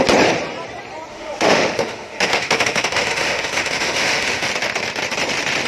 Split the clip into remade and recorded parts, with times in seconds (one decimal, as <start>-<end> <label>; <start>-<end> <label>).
0.0-1.1 recorded; 1.1-4.5 remade; 4.5-5.7 recorded